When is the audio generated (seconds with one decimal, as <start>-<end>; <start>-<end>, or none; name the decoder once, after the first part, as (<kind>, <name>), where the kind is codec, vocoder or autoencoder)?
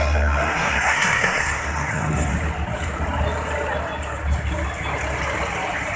0.0-2.3 (codec, SNAC)